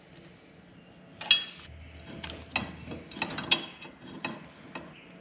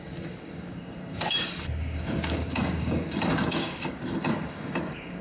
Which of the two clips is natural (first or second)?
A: first